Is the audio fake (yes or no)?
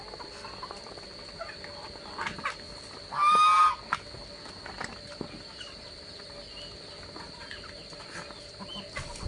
no